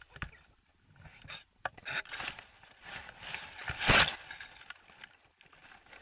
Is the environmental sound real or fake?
real